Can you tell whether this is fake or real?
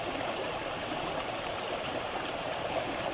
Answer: fake